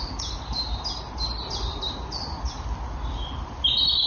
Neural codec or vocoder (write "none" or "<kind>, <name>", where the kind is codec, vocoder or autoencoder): none